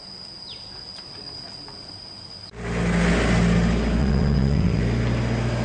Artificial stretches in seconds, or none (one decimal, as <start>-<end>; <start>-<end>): 4.0-4.8